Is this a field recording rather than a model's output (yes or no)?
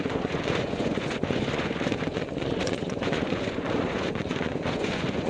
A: no